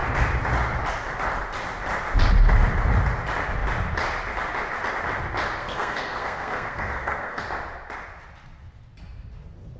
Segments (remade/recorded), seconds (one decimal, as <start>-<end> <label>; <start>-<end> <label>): 0.0-5.6 recorded; 5.6-7.4 remade; 7.4-9.8 recorded

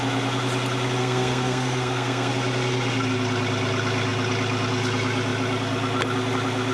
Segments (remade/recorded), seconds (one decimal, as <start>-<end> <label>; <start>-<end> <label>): 0.0-1.0 recorded; 1.0-2.3 remade; 2.3-6.7 recorded

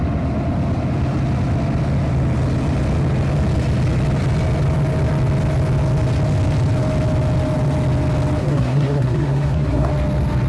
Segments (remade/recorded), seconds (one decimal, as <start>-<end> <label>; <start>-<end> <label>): 0.0-8.4 recorded; 8.4-9.9 remade; 9.9-10.5 recorded